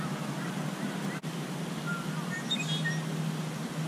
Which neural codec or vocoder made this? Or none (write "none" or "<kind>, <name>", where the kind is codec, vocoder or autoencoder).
none